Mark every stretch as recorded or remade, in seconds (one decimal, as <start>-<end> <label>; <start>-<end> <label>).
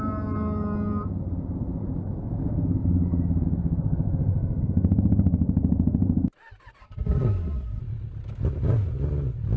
0.0-6.8 recorded; 6.8-7.8 remade; 7.8-9.6 recorded